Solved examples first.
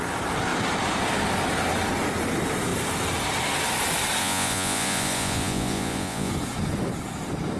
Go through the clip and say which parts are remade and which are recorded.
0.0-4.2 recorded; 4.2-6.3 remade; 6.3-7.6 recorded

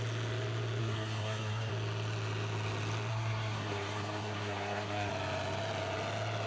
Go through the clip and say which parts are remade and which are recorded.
0.0-0.8 recorded; 0.8-1.7 remade; 1.7-3.1 recorded; 3.1-5.1 remade; 5.1-6.5 recorded

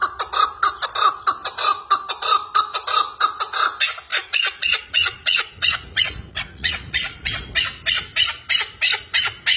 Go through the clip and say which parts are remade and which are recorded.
0.0-4.1 recorded; 4.1-7.3 remade; 7.3-9.6 recorded

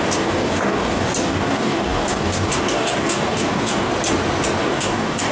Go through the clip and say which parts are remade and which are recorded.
0.0-3.9 remade; 3.9-4.6 recorded; 4.6-5.3 remade

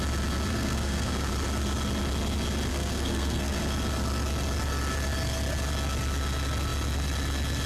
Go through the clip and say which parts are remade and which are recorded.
0.0-0.5 recorded; 0.5-1.3 remade; 1.3-2.7 recorded; 2.7-3.6 remade; 3.6-7.7 recorded

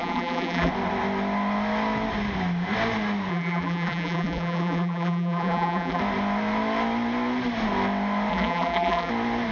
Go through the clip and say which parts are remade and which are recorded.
0.0-0.7 remade; 0.7-3.3 recorded; 3.3-6.0 remade; 6.0-8.3 recorded; 8.3-9.1 remade; 9.1-9.5 recorded

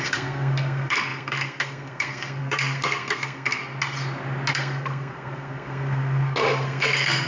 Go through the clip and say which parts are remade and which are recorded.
0.0-3.6 remade; 3.6-4.5 recorded; 4.5-7.3 remade

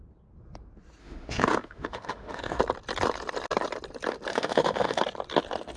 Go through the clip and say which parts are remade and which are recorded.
0.0-1.0 recorded; 1.0-2.6 remade; 2.6-4.3 recorded; 4.3-5.0 remade; 5.0-5.8 recorded